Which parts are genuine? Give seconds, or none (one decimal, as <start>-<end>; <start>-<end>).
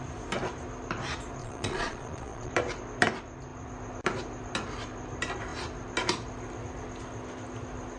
0.0-1.4; 2.5-8.0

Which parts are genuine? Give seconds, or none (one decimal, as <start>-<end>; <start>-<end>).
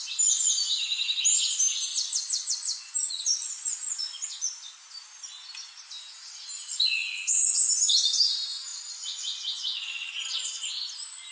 0.0-1.9; 4.7-7.0; 7.9-11.3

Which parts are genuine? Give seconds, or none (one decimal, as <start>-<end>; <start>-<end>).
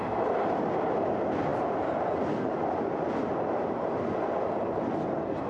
0.0-5.5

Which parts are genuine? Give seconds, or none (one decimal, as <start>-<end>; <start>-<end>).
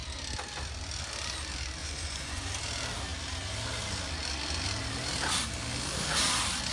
0.0-1.8; 2.5-6.7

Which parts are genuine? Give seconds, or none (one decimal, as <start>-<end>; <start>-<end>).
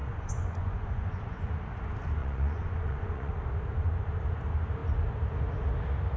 1.5-2.2; 3.3-6.2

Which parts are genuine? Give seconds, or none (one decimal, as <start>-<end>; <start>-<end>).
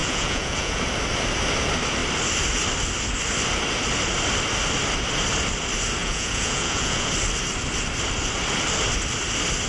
0.8-6.0; 7.1-9.7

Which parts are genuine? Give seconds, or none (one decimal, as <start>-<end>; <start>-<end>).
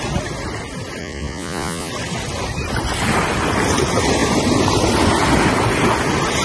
0.0-1.0; 1.9-6.4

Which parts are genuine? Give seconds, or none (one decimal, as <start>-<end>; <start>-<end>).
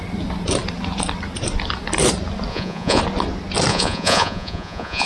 0.0-2.5; 3.0-3.7